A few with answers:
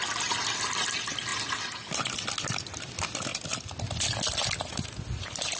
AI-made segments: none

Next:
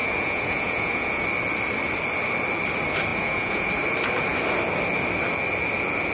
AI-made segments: 0.0-1.2 (vocoder, Vocos); 3.1-3.7

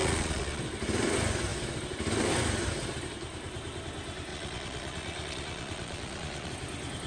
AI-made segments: 0.0-0.6 (vocoder, Vocos); 4.3-6.5

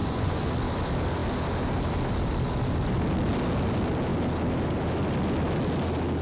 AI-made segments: 0.0-0.5 (vocoder, Vocos)

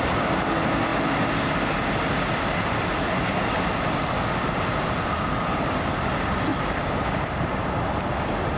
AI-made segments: none

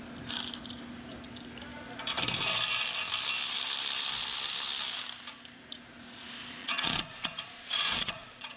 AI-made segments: 6.6-8.6 (vocoder, Vocos)

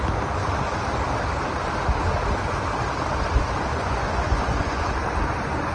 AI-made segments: 3.7-4.9 (vocoder, Vocos)